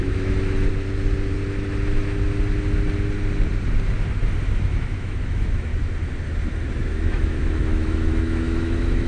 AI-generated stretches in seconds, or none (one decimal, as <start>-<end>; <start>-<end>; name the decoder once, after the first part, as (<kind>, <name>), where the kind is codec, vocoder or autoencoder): 0.0-0.7 (autoencoder, DAC-VAE); 4.6-5.7; 7.1-9.1